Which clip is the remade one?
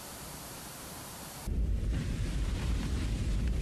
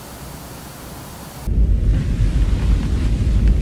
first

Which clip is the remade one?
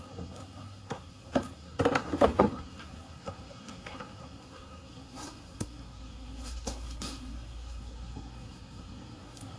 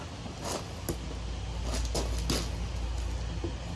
first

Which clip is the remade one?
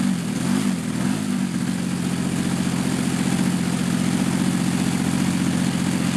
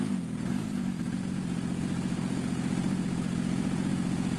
second